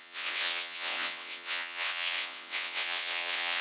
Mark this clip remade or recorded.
remade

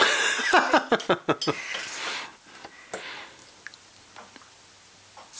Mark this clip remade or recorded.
recorded